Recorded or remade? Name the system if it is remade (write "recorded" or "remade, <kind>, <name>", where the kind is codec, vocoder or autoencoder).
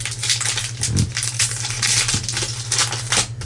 recorded